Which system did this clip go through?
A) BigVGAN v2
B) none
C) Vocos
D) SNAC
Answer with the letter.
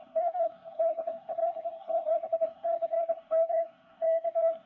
D